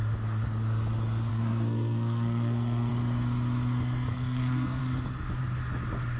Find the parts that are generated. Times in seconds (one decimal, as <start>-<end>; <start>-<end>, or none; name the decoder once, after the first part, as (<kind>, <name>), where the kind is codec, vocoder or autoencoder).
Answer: 1.3-2.9 (codec, SNAC); 4.1-4.8